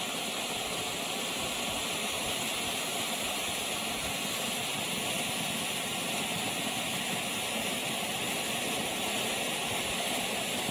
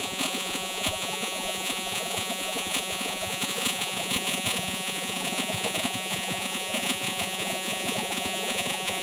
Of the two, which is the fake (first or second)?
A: second